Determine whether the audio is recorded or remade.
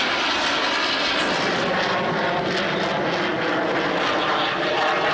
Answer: recorded